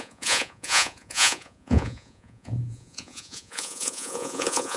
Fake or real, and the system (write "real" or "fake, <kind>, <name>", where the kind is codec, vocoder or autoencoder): fake, vocoder, Vocos